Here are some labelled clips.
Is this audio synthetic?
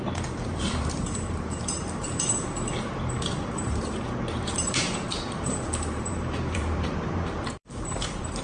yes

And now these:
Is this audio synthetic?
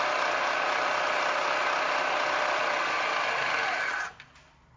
no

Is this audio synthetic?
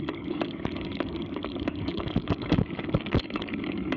yes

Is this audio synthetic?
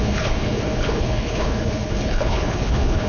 yes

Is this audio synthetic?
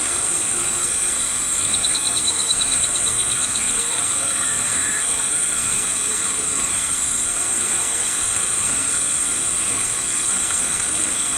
yes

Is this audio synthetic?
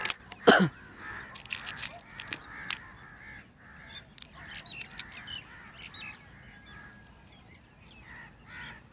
no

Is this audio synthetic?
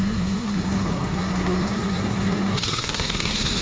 yes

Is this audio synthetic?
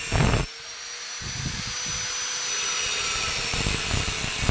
no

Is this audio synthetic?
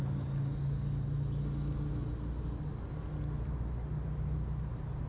no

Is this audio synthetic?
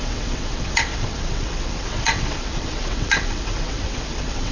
yes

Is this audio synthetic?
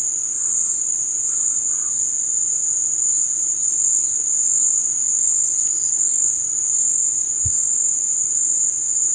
no